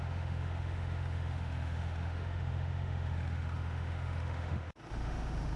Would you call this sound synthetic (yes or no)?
yes